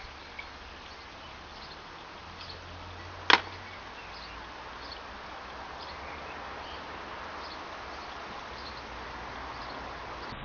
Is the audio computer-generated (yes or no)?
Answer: no